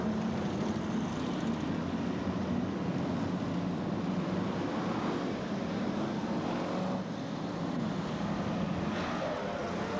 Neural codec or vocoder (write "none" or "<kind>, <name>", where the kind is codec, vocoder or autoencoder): none